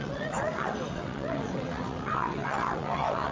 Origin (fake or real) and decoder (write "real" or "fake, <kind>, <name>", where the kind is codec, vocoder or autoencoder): fake, vocoder, WaveNeXt